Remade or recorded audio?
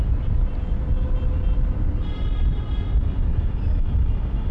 recorded